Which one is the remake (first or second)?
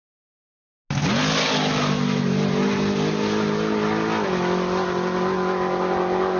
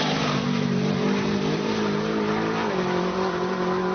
second